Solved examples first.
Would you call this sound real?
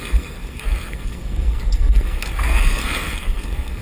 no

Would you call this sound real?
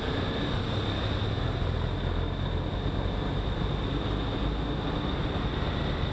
yes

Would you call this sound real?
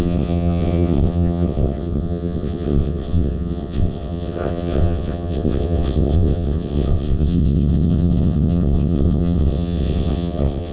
no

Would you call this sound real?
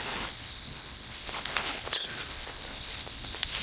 no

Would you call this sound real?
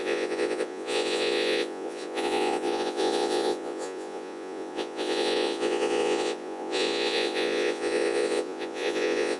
no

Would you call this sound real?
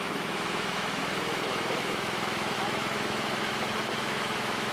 no